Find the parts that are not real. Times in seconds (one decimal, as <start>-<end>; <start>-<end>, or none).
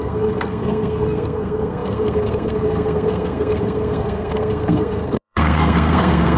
0.0-6.4